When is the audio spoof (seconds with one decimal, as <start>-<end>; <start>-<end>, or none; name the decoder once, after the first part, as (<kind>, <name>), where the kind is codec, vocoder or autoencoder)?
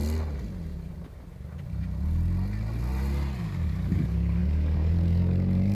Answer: 3.4-5.7 (codec, DAC)